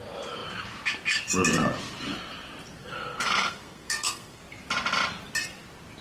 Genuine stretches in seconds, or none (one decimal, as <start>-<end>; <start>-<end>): 0.0-2.8; 4.4-6.0